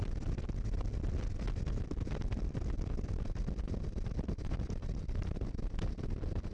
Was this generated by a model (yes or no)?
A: no